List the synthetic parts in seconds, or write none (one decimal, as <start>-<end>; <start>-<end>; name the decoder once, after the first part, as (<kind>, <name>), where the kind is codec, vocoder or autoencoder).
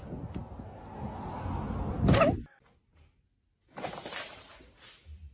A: none